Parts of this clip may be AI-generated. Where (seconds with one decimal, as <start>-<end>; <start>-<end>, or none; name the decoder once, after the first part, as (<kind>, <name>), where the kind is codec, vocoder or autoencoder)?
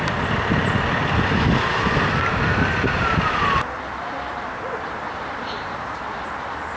none